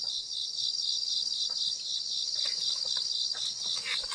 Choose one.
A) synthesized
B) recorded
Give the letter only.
B